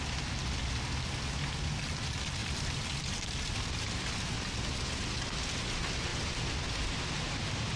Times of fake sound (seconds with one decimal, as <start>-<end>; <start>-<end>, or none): none